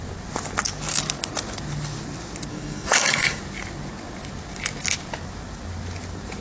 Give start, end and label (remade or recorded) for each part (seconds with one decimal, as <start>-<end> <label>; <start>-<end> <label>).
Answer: 0.0-2.5 recorded; 2.5-3.4 remade; 3.4-6.4 recorded